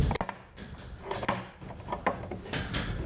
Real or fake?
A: real